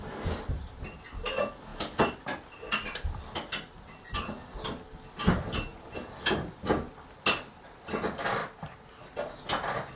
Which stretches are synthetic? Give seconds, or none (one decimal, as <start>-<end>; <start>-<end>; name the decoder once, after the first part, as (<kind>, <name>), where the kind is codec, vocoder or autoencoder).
none